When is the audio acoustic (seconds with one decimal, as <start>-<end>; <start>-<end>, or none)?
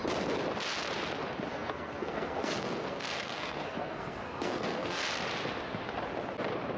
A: 0.0-1.5; 5.0-6.8